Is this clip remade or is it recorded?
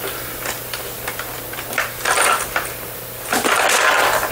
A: recorded